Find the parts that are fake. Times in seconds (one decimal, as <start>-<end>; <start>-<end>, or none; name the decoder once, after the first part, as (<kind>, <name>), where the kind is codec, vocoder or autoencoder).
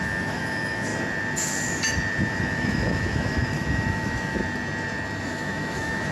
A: 0.0-0.9 (autoencoder, DAC-VAE); 2.4-4.4; 5.2-6.1